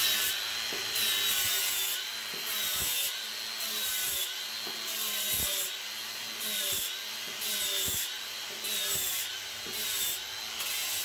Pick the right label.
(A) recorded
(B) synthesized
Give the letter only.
A